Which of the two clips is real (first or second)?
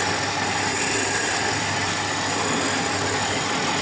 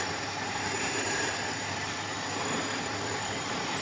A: first